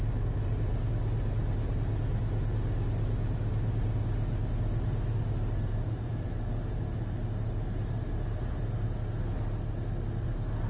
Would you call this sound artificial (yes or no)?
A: no